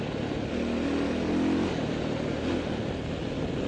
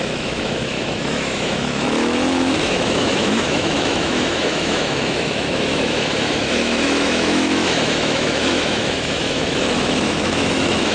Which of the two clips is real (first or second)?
first